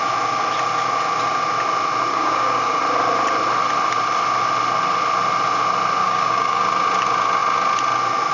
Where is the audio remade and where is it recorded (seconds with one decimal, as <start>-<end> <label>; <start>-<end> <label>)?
0.0-2.1 recorded; 2.1-2.8 remade; 2.8-6.0 recorded; 6.0-6.6 remade; 6.6-8.3 recorded